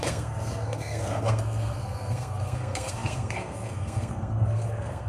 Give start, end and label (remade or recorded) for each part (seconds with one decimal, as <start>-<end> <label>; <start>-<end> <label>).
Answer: 0.0-5.1 remade